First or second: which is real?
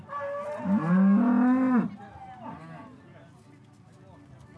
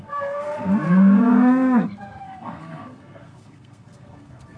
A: first